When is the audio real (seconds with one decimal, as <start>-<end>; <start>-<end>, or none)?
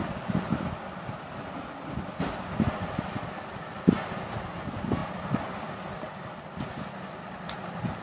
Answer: 0.0-8.0